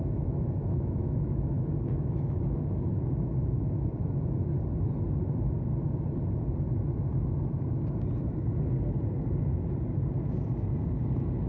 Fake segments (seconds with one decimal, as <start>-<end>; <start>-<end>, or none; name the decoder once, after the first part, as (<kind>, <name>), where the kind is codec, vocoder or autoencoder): 0.6-3.6 (autoencoder, DAC-VAE)

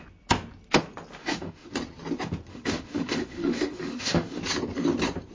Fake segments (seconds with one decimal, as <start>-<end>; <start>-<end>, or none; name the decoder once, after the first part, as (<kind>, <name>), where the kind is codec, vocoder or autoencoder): 1.2-1.7 (autoencoder, DAC-VAE); 2.5-4.4

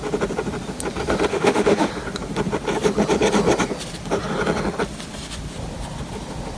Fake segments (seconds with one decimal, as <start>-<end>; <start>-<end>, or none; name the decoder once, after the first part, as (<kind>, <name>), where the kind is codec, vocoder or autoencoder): 1.3-1.9 (autoencoder, DAC-VAE)

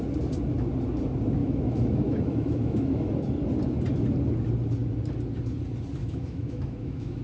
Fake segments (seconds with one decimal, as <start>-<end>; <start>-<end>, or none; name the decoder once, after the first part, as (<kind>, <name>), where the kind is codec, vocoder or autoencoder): 1.4-3.1 (autoencoder, DAC-VAE); 6.0-7.2

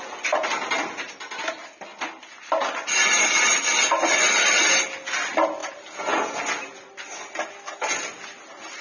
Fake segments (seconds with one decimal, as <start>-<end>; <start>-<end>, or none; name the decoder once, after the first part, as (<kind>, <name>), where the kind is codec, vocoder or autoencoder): none